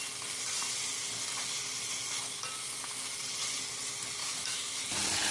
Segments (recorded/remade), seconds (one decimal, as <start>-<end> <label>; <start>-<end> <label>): 0.0-4.2 recorded; 4.2-4.8 remade; 4.8-5.3 recorded